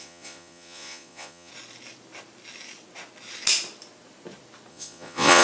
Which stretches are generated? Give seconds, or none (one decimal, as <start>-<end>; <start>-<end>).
0.0-1.5; 4.7-5.4